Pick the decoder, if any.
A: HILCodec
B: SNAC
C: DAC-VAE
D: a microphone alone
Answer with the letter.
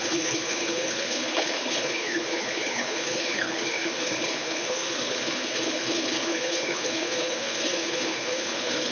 A